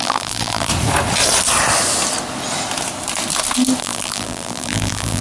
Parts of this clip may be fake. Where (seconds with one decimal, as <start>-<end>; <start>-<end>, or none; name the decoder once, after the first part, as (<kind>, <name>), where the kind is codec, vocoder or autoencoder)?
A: 0.0-0.7 (vocoder, BigVGAN v2); 3.8-5.2